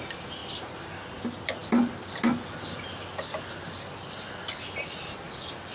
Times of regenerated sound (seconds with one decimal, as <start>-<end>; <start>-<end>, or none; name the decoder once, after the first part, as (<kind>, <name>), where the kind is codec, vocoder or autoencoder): none

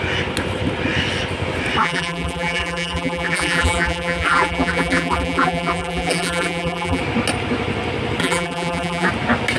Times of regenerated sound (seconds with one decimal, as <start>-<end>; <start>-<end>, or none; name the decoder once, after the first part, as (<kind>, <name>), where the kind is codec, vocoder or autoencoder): 1.8-7.0 (vocoder, BigVGAN v2); 8.2-9.1

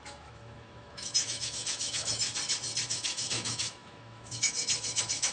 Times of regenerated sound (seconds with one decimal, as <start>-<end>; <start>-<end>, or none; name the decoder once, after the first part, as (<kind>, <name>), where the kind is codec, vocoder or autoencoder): 0.0-2.3 (autoencoder, DAC-VAE); 2.9-5.3

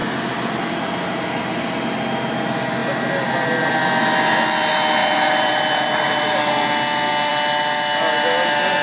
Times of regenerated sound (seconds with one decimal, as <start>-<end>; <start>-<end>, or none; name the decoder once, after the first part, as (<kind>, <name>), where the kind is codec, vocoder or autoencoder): 0.0-0.7 (vocoder, BigVGAN v2); 5.0-6.4

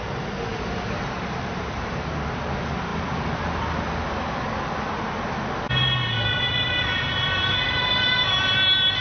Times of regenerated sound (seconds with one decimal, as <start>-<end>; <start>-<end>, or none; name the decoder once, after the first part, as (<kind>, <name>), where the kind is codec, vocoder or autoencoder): 0.5-2.1 (vocoder, BigVGAN v2)

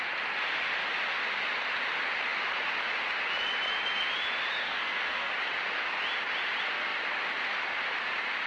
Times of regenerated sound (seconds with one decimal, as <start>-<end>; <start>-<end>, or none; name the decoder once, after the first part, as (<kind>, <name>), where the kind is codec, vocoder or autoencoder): 4.6-5.3 (codec, SNAC)